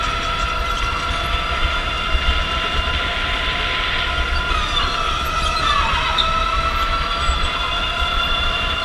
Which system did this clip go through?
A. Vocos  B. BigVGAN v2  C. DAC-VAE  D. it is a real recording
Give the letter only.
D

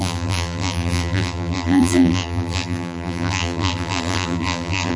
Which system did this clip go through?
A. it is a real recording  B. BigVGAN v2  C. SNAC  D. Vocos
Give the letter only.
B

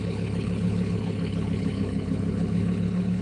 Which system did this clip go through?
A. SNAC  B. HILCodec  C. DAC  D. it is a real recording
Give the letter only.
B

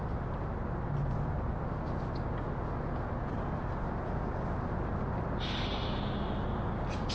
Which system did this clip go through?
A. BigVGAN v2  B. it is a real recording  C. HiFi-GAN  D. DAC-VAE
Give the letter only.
B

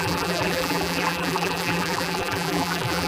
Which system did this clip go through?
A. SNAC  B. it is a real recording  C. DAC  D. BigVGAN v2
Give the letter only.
D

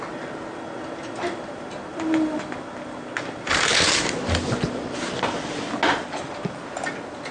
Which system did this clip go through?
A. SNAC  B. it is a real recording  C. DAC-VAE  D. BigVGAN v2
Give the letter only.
B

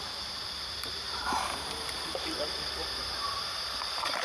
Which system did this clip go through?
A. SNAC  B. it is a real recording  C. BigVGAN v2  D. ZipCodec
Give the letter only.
C